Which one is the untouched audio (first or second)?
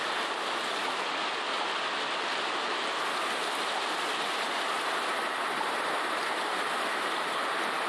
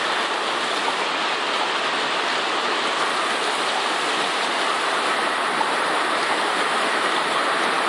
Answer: first